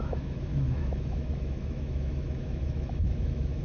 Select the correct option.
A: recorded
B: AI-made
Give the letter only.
B